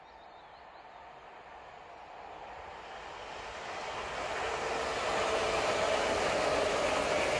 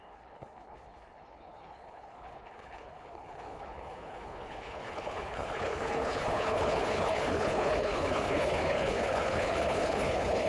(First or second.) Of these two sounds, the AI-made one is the second